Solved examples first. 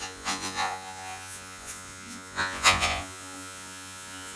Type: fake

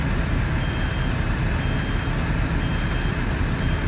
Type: real